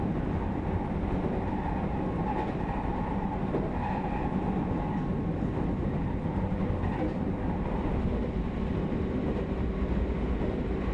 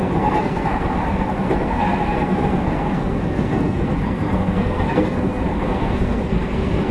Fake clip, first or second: second